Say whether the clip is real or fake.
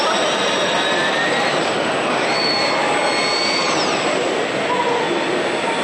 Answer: real